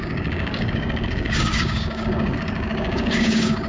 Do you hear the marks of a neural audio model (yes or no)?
yes